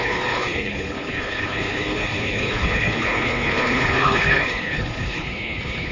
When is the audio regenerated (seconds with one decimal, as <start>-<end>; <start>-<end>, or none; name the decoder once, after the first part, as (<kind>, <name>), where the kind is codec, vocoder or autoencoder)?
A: 0.0-5.9 (codec, HILCodec)